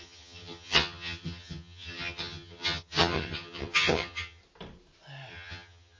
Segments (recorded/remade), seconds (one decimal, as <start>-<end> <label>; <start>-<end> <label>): 0.0-4.4 remade; 4.4-5.3 recorded; 5.3-6.0 remade